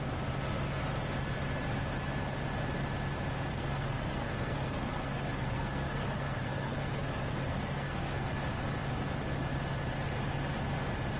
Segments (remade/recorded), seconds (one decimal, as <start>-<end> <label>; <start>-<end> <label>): 0.0-3.5 recorded; 3.5-8.3 remade; 8.3-11.2 recorded